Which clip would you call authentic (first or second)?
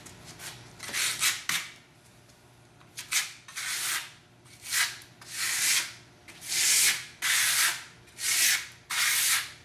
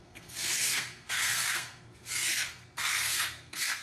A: first